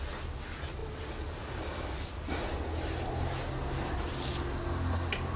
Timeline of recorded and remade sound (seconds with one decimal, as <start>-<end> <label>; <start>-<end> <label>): 0.0-5.4 recorded